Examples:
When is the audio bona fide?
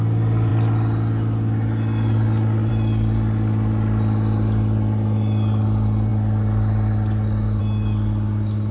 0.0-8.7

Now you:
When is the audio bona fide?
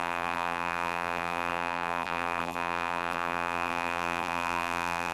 none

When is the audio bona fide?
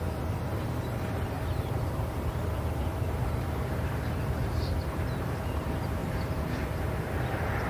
0.0-0.5; 5.0-6.0; 6.7-7.7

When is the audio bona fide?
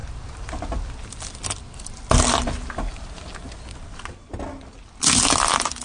0.0-5.8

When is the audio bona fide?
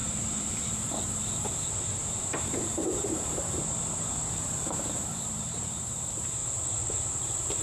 6.4-7.0